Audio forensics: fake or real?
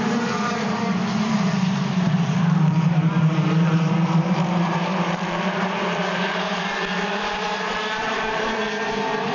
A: fake